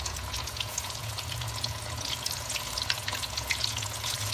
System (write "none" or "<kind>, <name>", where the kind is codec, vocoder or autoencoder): vocoder, Vocos